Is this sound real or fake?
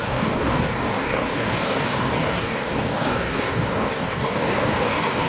fake